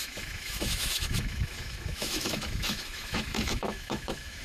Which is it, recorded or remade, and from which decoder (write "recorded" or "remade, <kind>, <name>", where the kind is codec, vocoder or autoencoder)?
remade, autoencoder, DAC-VAE